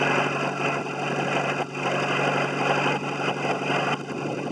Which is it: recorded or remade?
recorded